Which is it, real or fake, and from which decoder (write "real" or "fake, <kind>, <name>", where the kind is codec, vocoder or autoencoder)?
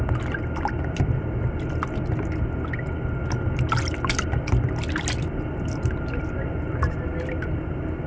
real